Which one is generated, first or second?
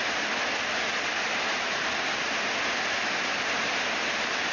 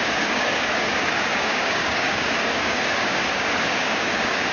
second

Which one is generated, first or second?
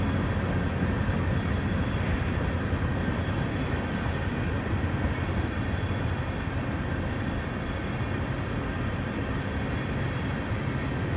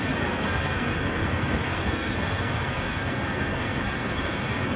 second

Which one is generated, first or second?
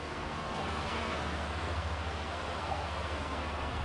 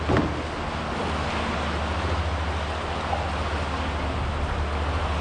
first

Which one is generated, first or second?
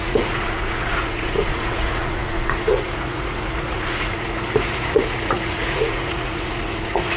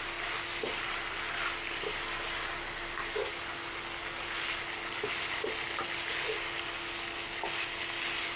first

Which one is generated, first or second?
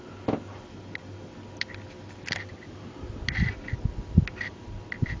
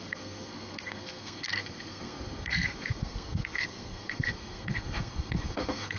second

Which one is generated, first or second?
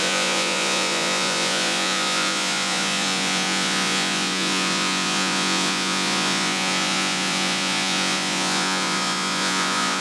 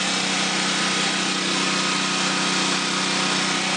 first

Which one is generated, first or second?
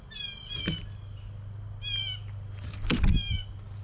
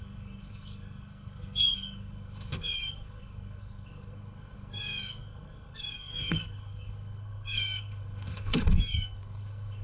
second